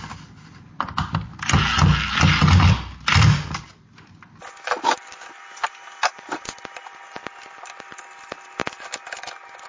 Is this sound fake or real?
real